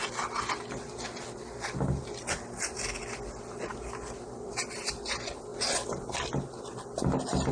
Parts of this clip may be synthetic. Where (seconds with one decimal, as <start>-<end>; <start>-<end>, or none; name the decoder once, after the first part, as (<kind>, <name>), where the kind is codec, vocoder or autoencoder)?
3.7-4.8 (vocoder, BigVGAN v2)